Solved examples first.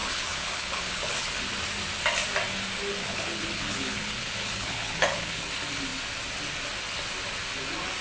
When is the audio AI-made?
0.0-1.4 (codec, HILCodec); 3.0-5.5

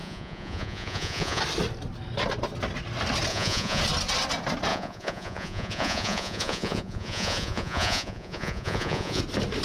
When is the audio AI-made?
0.0-1.4 (vocoder, Vocos); 3.3-3.8; 4.7-9.2

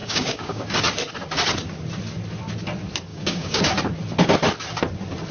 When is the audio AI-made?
0.0-0.6 (codec, DAC); 3.1-3.6